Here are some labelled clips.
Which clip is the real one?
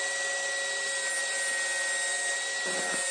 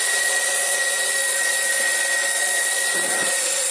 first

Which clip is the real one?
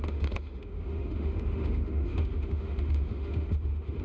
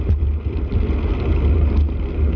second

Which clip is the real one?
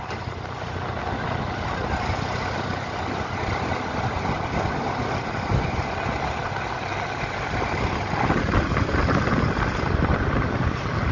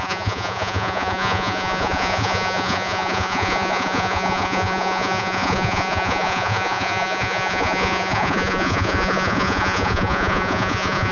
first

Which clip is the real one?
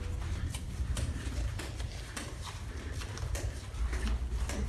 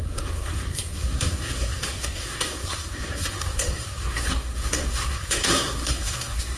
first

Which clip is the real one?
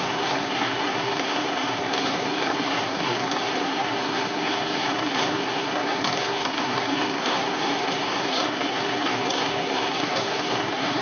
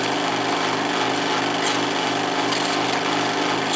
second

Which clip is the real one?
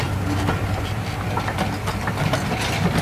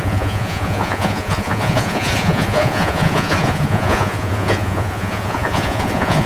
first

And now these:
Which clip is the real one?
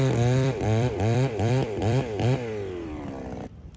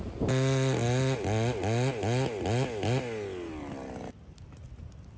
second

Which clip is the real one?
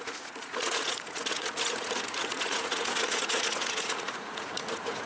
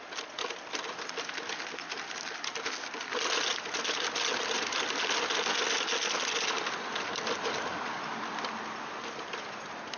second